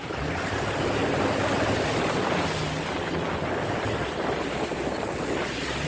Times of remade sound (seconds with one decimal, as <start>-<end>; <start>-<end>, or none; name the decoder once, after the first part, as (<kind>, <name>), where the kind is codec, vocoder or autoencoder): none